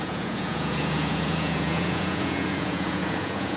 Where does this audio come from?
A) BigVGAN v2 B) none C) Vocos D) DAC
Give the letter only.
C